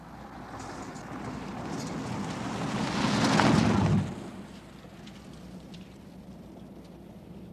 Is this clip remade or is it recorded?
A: recorded